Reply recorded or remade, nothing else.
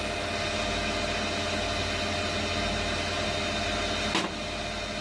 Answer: recorded